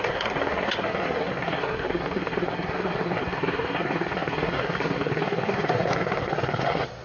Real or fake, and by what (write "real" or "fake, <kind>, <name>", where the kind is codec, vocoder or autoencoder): fake, codec, SNAC